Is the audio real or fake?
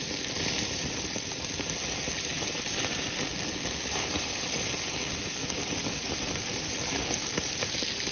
real